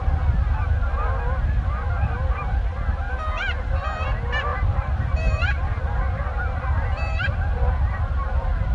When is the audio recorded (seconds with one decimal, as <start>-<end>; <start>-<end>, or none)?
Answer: 0.0-8.7

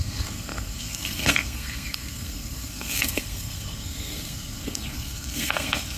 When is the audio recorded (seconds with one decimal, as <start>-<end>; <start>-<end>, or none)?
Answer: none

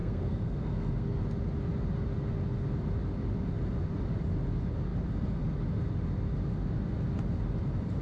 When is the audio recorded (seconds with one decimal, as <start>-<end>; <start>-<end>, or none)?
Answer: 1.2-8.0

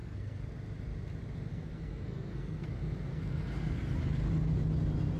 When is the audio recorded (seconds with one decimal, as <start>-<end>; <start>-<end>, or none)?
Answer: 0.5-1.5; 2.7-3.1; 3.8-5.2

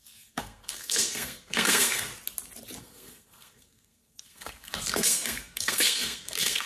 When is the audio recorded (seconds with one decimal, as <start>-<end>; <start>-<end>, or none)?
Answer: 2.1-2.8

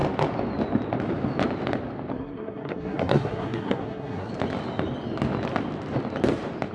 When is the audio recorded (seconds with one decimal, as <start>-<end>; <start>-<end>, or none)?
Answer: 0.0-2.1; 4.3-6.7